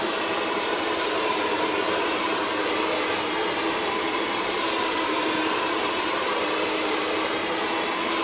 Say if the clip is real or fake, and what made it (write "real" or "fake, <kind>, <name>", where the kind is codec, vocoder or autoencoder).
fake, vocoder, BigVGAN v2